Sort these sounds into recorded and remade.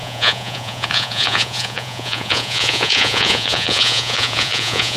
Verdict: remade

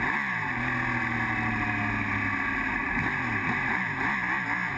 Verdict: recorded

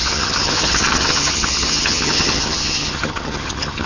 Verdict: remade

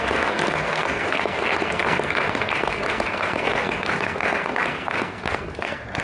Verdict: remade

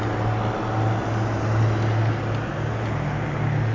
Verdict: recorded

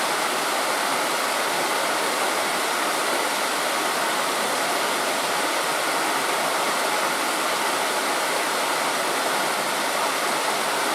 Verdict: recorded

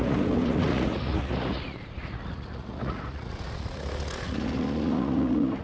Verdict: remade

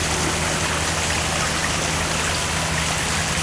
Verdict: recorded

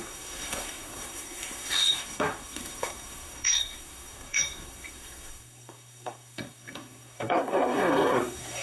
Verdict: remade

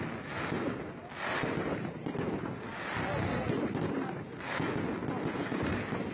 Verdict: recorded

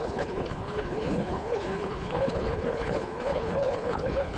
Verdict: remade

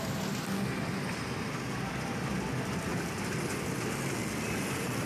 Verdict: recorded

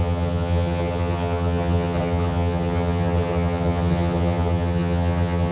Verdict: remade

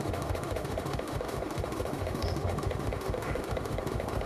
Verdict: remade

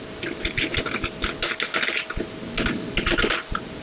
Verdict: recorded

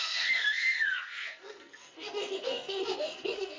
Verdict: remade